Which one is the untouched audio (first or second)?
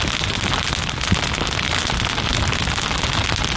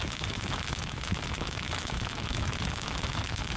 first